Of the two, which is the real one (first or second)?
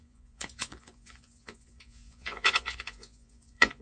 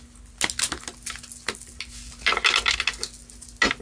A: second